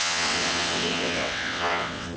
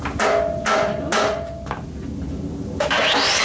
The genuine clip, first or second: second